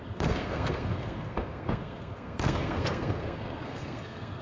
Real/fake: fake